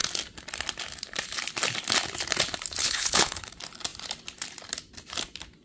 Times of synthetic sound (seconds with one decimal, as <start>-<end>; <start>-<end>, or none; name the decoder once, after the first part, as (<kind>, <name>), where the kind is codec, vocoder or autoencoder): 2.8-3.5 (codec, HILCodec)